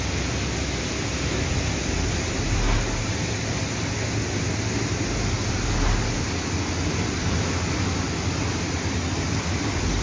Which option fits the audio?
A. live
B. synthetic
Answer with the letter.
A